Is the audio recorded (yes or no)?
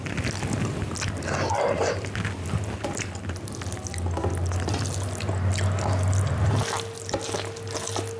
yes